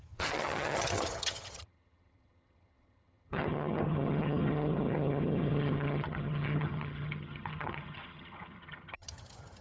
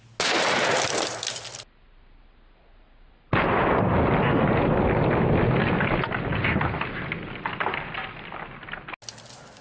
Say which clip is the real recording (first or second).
second